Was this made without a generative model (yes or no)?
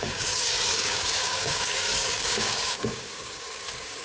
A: no